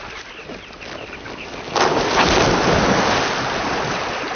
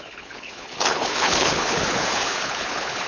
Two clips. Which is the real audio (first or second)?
first